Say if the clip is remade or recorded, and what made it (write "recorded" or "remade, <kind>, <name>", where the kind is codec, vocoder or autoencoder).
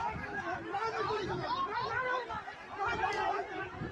recorded